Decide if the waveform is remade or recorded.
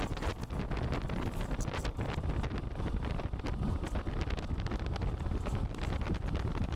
recorded